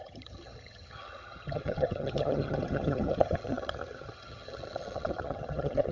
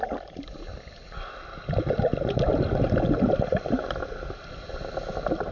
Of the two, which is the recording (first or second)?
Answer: second